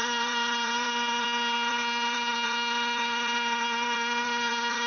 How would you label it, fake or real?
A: fake